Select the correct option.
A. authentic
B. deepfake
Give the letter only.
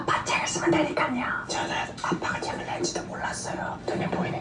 A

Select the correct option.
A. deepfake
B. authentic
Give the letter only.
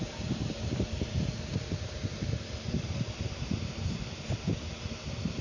A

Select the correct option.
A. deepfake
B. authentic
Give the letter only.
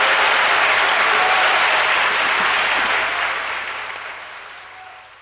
B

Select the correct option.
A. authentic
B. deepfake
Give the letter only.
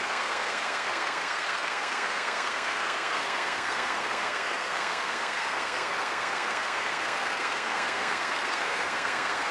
B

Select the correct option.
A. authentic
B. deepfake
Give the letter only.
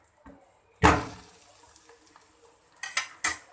A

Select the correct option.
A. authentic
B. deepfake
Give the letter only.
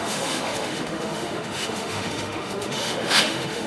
B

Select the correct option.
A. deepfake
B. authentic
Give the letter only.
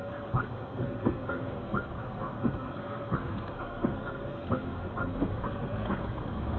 A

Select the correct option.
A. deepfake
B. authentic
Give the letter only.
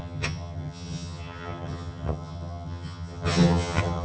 A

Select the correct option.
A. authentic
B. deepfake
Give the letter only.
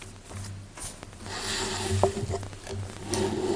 A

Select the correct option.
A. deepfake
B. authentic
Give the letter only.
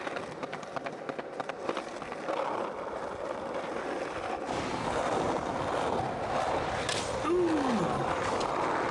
B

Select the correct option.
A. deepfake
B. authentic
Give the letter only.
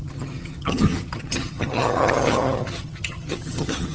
A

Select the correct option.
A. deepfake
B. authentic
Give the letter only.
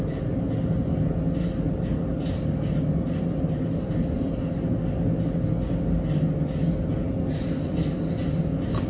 B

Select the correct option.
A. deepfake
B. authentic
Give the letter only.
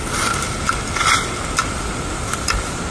B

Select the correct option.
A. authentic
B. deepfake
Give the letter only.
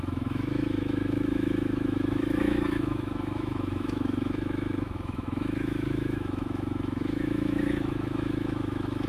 B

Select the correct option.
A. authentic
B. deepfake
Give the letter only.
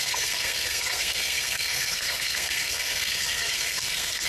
B